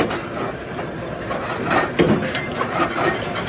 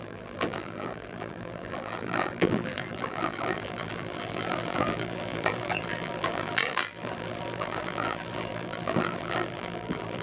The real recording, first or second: first